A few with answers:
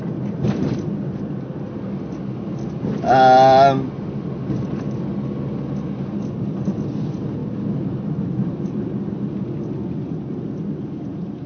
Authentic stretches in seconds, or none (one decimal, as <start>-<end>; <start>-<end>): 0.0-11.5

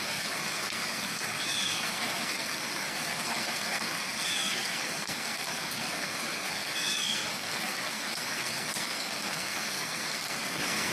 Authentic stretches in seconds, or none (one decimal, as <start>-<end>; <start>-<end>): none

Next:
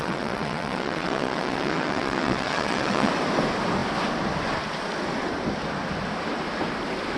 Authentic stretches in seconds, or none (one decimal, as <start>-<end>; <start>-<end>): 3.1-7.2